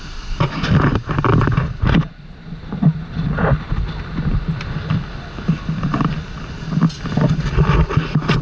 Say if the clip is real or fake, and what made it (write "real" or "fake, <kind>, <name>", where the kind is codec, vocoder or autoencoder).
real